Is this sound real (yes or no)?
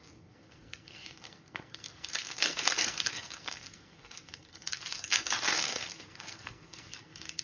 no